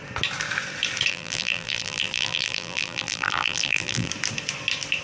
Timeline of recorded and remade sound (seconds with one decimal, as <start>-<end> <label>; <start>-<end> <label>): 0.0-1.1 recorded; 1.1-4.1 remade; 4.1-5.0 recorded